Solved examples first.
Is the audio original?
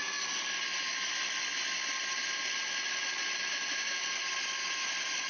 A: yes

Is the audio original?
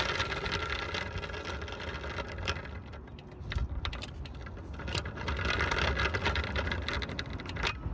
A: yes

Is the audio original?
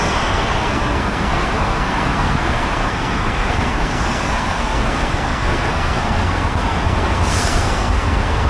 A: no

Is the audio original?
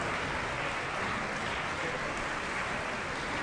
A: yes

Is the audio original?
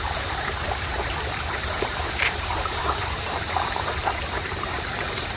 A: no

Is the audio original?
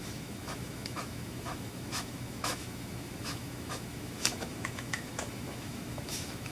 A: no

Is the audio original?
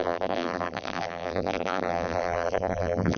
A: no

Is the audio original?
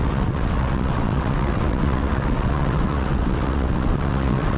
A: no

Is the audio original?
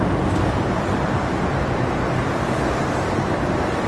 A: yes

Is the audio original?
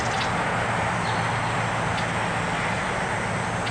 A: yes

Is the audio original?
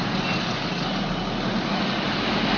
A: yes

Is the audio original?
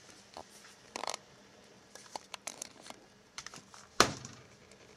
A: no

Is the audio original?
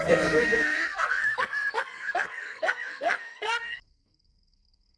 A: no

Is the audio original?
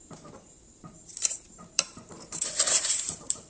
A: no